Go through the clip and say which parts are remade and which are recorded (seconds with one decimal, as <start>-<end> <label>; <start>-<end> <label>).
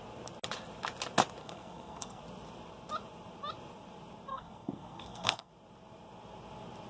0.0-1.4 recorded; 1.4-2.2 remade; 2.2-4.3 recorded; 4.3-5.5 remade; 5.5-6.9 recorded